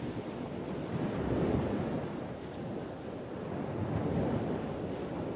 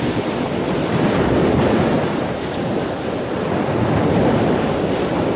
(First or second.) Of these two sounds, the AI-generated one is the second